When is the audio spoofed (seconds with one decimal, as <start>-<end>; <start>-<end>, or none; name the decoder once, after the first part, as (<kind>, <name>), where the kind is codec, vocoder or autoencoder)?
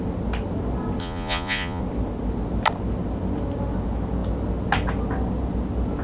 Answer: 1.0-1.8 (vocoder, Vocos)